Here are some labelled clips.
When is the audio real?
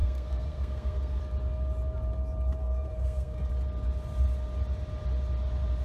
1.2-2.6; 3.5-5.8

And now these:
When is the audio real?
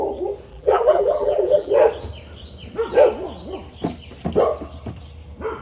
0.0-0.5; 1.7-5.6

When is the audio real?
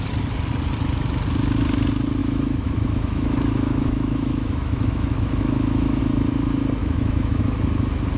0.0-2.2; 6.0-6.8; 7.4-8.2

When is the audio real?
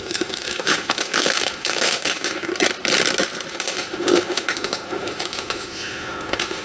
2.5-3.5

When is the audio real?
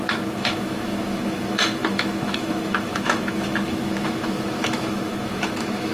none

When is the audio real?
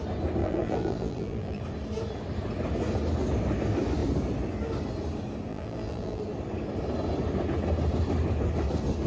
0.0-0.4; 1.6-5.5; 6.2-9.1